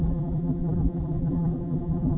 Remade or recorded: remade